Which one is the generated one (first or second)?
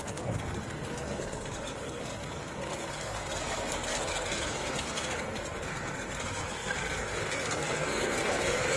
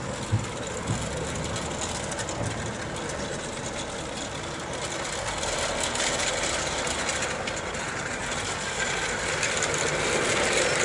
first